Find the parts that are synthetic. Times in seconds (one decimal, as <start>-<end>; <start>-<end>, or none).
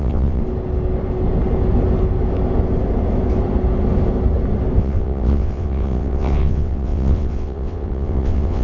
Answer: 0.0-0.4; 4.8-8.6